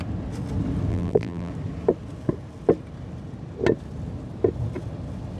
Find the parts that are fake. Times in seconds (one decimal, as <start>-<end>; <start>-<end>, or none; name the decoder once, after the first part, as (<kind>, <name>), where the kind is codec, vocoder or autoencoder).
0.9-1.5 (vocoder, BigVGAN v2)